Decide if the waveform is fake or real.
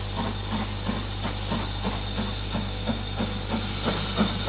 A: real